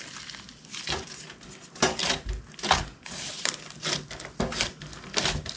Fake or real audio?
real